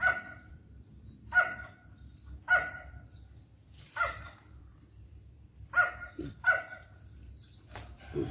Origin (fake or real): fake